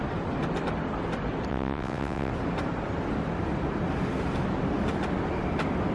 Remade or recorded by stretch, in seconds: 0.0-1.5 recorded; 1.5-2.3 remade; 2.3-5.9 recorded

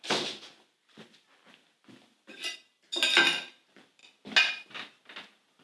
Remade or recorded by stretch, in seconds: 0.0-5.6 recorded

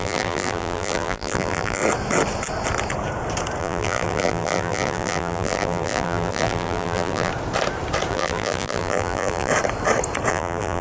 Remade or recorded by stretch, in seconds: 0.0-1.8 remade; 1.8-3.6 recorded; 3.6-7.3 remade; 7.3-8.1 recorded; 8.1-9.5 remade; 9.5-10.3 recorded; 10.3-10.8 remade